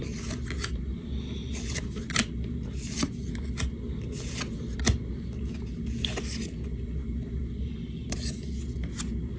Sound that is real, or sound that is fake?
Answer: real